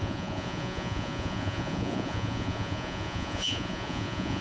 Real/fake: fake